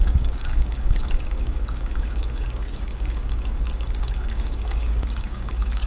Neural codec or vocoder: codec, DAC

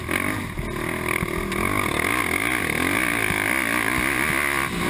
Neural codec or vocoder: none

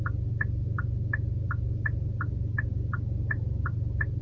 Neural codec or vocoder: none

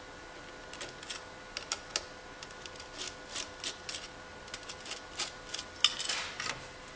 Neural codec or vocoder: none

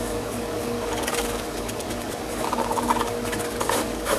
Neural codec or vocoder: codec, DAC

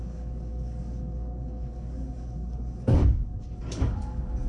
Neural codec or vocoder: codec, DAC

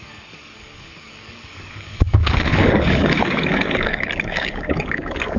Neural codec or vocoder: codec, DAC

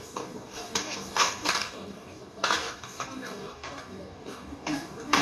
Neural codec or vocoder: codec, DAC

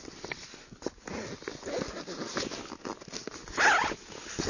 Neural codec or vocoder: none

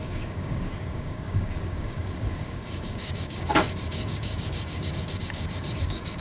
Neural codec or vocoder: codec, DAC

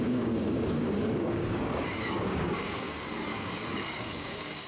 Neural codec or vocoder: codec, DAC